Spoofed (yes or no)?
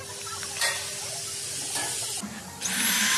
no